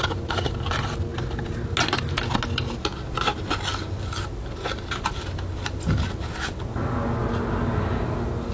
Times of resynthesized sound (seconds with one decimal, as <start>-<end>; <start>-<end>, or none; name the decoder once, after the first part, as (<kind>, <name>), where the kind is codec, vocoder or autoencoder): none